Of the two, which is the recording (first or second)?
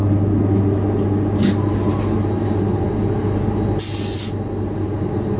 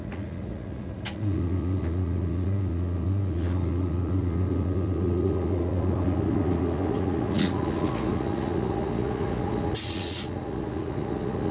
first